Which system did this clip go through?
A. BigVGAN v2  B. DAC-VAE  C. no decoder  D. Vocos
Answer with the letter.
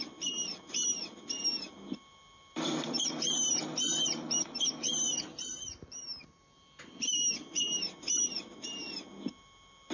C